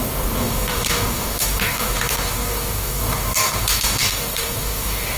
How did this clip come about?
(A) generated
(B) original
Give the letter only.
A